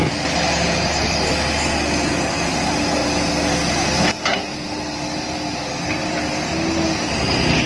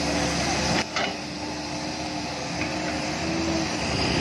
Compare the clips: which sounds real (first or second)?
first